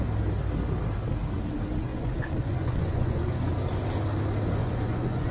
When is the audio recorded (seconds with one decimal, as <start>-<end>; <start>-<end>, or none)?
0.0-1.9; 3.5-4.6